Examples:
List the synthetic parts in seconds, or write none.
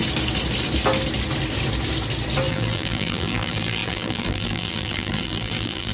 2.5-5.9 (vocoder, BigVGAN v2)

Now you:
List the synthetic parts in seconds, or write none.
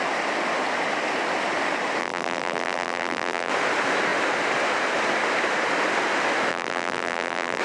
2.0-3.5 (vocoder, BigVGAN v2); 6.5-7.6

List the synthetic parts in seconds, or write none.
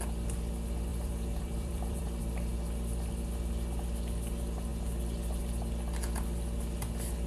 0.9-2.2 (vocoder, BigVGAN v2)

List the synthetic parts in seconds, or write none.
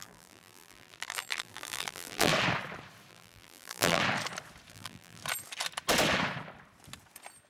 0.0-2.3 (vocoder, BigVGAN v2); 3.1-4.0; 4.7-5.2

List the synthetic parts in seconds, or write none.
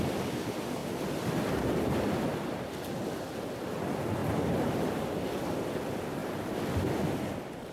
4.2-5.4 (vocoder, BigVGAN v2)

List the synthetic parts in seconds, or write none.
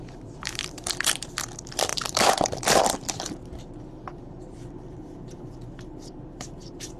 0.0-7.0 (vocoder, BigVGAN v2)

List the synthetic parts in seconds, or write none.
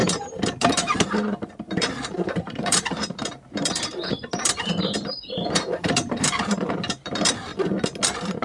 0.0-7.5 (vocoder, BigVGAN v2)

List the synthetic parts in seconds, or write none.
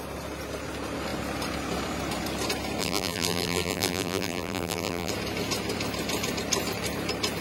2.8-5.1 (vocoder, BigVGAN v2)